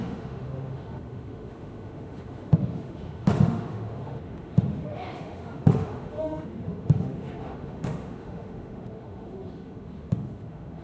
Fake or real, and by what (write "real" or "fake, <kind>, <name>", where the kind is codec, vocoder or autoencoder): fake, autoencoder, DAC-VAE